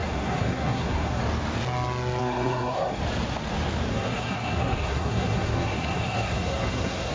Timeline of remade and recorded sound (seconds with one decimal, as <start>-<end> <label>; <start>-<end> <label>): 0.0-1.2 remade; 1.2-2.2 recorded; 2.2-3.0 remade; 3.0-3.9 recorded; 3.9-7.1 remade